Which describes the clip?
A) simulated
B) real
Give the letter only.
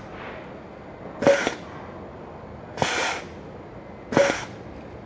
B